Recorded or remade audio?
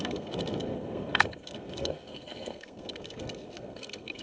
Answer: remade